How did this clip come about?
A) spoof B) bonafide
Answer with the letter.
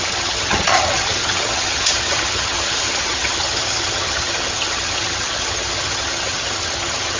A